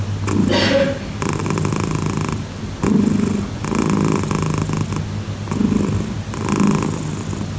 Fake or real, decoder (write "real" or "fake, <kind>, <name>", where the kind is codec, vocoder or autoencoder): real